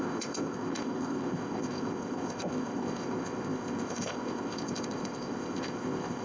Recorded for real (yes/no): no